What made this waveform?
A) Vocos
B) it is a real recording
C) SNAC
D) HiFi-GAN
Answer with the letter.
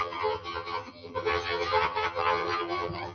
D